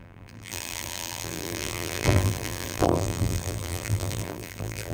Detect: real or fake fake